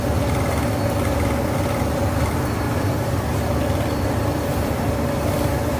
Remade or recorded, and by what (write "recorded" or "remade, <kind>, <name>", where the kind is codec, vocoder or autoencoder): remade, vocoder, BigVGAN v2